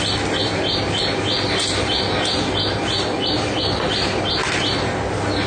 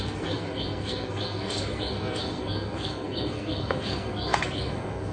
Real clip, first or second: first